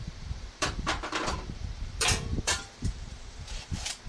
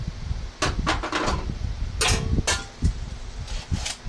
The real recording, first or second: second